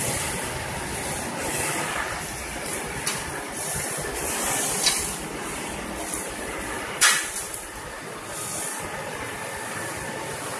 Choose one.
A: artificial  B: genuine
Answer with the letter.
A